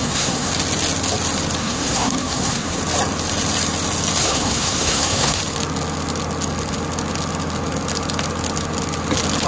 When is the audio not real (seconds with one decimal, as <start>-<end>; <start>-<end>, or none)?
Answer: 0.0-0.5; 1.6-2.8; 4.2-5.4

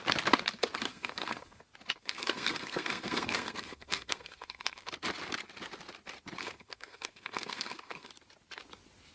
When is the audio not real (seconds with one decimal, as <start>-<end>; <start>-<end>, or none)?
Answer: 0.9-1.6; 2.0-4.9; 6.4-8.1

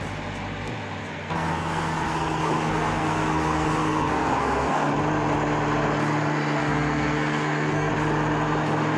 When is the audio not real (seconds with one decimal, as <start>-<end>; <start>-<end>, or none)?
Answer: 1.0-4.9; 6.6-7.9

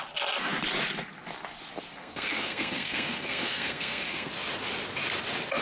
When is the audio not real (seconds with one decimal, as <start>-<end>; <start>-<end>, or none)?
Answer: 1.9-4.3

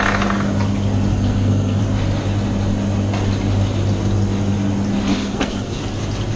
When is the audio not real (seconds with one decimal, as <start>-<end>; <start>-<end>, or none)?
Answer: 1.1-1.8; 5.1-5.8